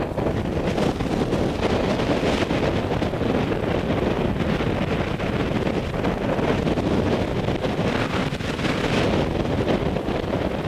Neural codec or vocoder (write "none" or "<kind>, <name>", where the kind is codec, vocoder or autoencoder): none